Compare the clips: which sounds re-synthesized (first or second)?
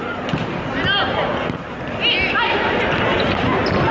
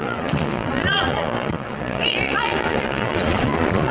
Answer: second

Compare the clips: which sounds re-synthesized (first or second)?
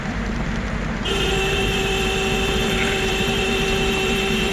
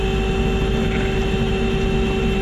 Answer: first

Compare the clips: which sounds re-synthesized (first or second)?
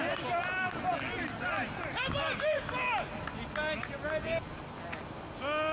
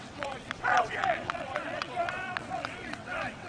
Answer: second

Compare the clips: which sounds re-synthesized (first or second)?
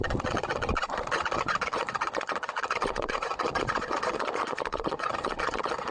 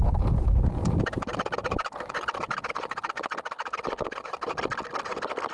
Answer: first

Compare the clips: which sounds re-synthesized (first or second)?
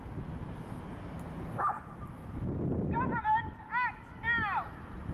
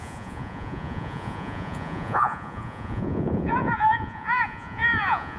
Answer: second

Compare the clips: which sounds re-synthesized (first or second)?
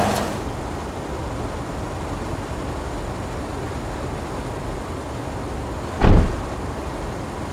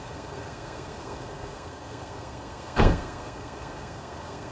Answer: second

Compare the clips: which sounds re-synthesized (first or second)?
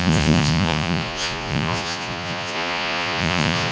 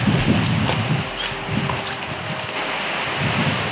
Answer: first